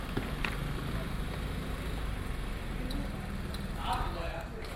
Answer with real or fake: real